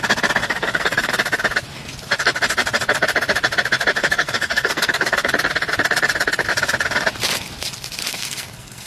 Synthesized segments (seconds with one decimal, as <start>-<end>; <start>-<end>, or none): 0.4-1.1; 4.0-5.3; 8.1-8.9